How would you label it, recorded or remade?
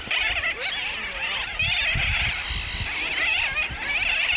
recorded